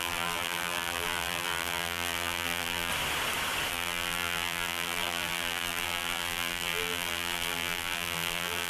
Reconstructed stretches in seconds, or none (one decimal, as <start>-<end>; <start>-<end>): 0.0-2.9; 3.7-8.7